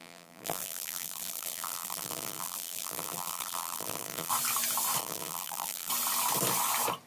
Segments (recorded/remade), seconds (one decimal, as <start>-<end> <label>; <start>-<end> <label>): 0.0-4.3 remade; 4.3-5.0 recorded; 5.0-5.9 remade; 5.9-7.1 recorded